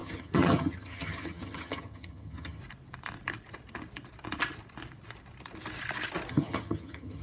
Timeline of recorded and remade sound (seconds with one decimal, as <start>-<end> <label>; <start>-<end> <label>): 0.0-2.6 remade; 2.6-6.3 recorded; 6.3-7.2 remade